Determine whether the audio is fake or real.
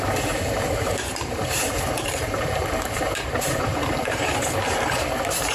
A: fake